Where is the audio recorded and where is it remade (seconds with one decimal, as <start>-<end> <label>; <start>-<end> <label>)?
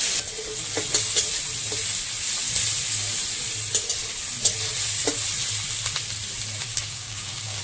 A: 0.0-6.7 recorded; 6.7-7.6 remade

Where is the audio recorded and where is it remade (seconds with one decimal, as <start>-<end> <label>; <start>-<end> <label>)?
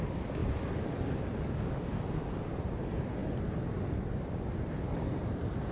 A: 0.0-5.7 recorded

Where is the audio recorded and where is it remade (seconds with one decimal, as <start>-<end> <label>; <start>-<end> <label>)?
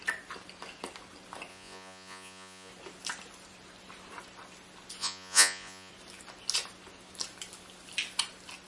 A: 0.0-1.5 recorded; 1.5-2.7 remade; 2.7-5.0 recorded; 5.0-5.9 remade; 5.9-8.7 recorded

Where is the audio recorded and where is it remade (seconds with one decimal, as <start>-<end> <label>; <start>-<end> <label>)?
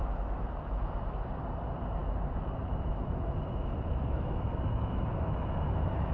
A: 0.0-1.4 remade; 1.4-2.0 recorded; 2.0-6.1 remade